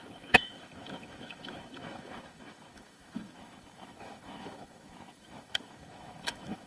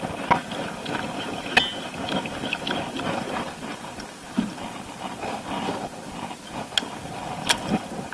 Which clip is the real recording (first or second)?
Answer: second